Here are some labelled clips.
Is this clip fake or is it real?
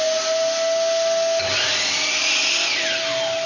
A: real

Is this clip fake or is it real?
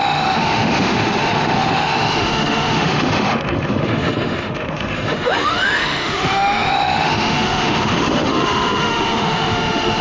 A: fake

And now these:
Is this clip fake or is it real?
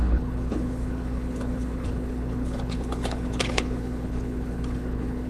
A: fake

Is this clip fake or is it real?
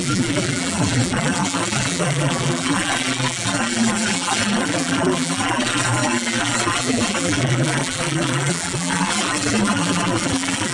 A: fake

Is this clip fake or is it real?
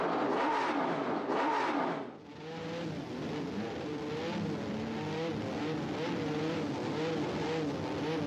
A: real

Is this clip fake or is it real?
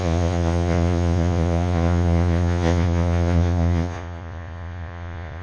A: fake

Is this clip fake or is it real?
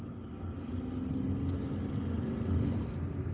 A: real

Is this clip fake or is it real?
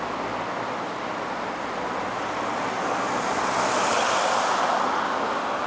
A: real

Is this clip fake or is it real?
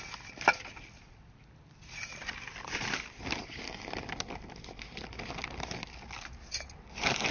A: real